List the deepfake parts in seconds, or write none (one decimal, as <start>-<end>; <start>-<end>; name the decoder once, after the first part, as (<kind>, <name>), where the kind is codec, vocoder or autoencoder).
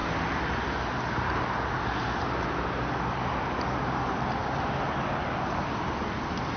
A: none